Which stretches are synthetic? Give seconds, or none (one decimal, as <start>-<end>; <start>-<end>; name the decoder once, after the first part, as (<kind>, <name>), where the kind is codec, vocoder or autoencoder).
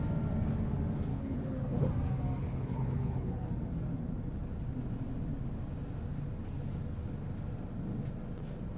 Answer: 1.1-1.9 (codec, HILCodec); 2.4-3.5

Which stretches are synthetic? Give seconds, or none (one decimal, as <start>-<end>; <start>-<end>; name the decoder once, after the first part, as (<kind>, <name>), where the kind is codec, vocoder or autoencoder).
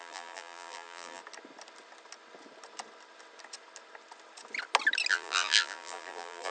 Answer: 0.0-1.2 (vocoder, BigVGAN v2); 5.1-6.5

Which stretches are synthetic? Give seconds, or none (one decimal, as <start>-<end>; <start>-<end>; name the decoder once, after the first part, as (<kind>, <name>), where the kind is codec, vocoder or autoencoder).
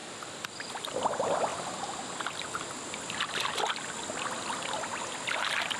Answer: none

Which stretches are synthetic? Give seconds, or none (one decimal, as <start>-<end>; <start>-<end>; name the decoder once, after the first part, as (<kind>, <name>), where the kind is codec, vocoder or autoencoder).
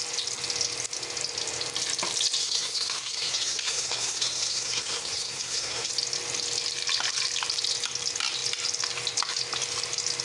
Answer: 2.4-5.9 (codec, SNAC)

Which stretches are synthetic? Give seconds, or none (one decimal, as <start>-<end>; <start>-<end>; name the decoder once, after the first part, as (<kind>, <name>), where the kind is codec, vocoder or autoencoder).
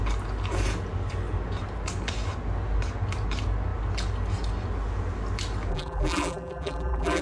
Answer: 5.7-7.2 (vocoder, BigVGAN v2)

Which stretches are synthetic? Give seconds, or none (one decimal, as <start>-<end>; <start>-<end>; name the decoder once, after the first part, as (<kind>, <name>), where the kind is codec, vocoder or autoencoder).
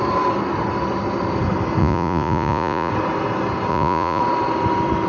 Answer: 1.8-2.9 (vocoder, Vocos); 3.7-4.2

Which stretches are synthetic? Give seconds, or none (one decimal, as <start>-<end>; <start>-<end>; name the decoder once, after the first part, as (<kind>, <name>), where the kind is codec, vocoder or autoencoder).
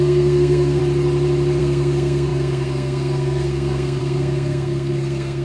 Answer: 0.0-0.8 (codec, SNAC); 1.6-5.4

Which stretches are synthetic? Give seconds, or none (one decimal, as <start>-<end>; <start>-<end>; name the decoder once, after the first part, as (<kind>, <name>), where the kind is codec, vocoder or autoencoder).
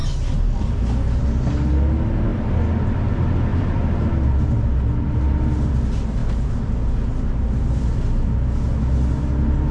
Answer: none